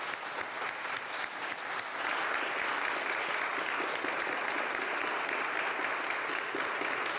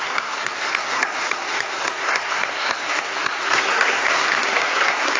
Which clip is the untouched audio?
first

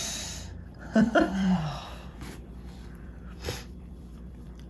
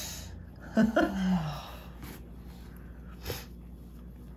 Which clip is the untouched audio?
second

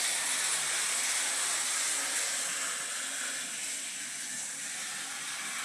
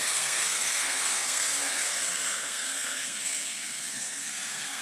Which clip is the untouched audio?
first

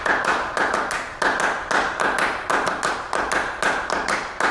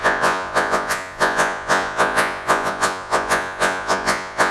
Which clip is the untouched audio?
first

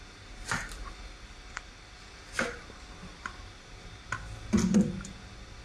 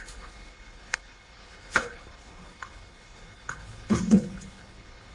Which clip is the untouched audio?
first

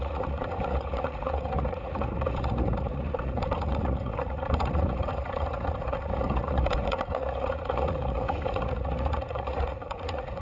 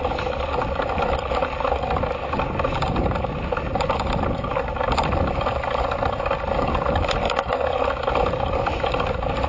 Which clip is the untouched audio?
second